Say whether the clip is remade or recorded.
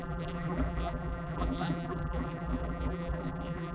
remade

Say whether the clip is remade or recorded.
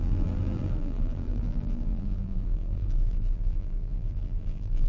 remade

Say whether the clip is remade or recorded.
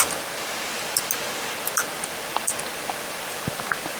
recorded